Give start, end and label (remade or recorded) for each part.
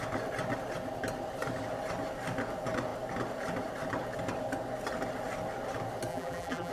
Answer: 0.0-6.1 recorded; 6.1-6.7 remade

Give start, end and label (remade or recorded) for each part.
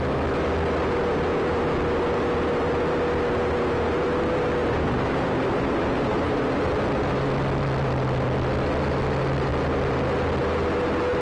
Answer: 0.0-4.6 recorded; 4.6-6.7 remade; 6.7-11.2 recorded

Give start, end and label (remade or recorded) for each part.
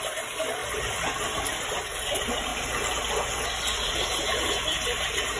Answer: 0.0-0.6 remade; 0.6-1.4 recorded; 1.4-2.5 remade; 2.5-4.0 recorded; 4.0-5.4 remade